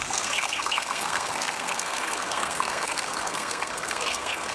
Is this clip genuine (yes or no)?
no